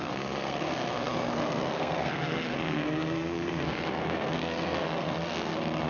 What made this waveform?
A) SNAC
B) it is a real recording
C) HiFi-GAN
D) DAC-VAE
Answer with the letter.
A